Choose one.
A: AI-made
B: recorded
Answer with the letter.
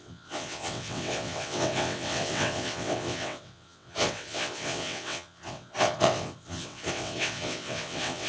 A